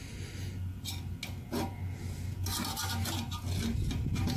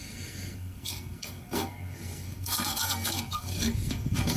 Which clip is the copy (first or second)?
second